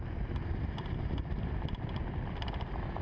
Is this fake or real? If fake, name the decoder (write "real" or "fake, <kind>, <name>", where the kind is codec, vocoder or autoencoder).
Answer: real